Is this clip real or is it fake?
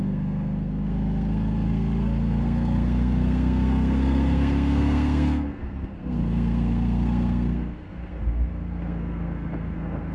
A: fake